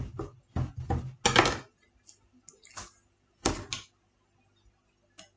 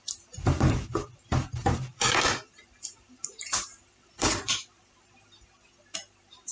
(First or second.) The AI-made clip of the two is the second